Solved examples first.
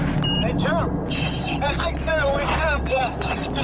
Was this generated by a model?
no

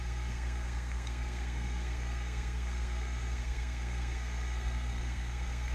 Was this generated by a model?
yes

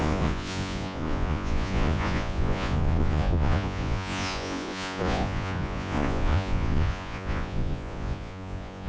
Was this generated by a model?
yes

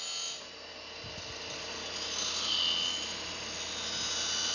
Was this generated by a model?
no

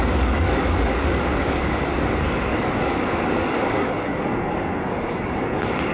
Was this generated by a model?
yes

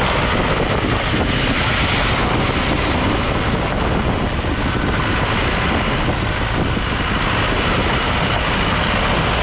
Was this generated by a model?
no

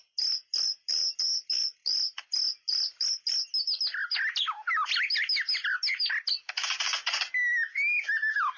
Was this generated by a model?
no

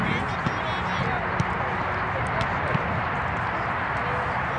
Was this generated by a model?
no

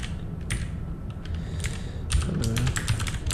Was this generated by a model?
no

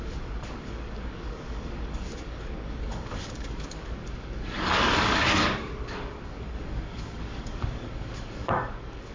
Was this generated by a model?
yes